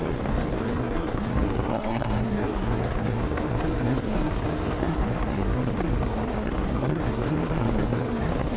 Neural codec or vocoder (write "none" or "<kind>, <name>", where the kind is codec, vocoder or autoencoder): codec, SNAC